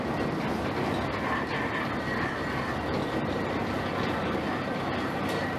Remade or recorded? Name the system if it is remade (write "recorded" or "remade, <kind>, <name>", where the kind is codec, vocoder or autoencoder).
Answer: recorded